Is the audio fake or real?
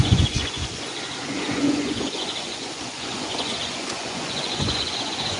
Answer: fake